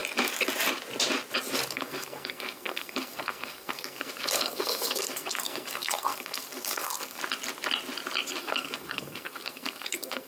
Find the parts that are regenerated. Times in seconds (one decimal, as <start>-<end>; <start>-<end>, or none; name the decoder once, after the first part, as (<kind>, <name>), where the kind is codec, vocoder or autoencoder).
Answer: 1.7-7.2 (codec, SNAC); 8.4-10.3

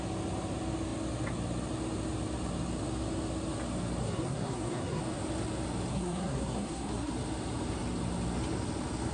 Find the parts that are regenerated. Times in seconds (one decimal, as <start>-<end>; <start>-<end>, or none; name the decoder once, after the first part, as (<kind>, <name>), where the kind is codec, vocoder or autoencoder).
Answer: 4.0-5.0 (codec, SNAC); 5.9-7.1

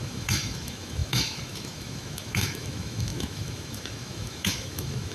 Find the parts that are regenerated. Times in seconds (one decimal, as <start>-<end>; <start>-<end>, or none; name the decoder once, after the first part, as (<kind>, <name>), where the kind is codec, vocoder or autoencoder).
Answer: 0.0-5.1 (autoencoder, DAC-VAE)

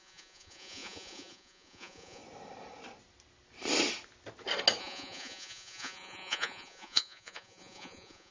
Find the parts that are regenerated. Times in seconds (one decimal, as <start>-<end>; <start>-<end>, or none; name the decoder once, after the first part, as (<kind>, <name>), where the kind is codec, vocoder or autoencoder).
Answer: 0.0-2.2 (vocoder, Vocos); 4.8-8.3

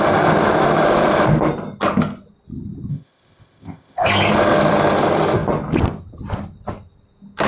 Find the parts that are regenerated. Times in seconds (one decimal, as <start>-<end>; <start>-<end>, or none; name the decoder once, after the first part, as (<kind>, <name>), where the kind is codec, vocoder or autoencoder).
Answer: 2.9-4.1 (codec, ZipCodec)

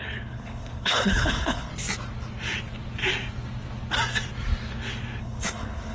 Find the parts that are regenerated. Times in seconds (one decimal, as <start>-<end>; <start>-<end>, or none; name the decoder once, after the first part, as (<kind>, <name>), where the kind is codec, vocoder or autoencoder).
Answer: 0.0-1.7 (codec, HILCodec); 5.2-5.9

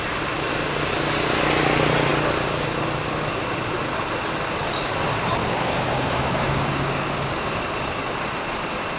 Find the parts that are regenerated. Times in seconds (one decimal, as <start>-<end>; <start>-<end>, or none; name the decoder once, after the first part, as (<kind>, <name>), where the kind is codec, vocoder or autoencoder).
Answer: 5.4-7.6 (codec, DAC)